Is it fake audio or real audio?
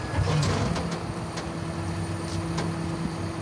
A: real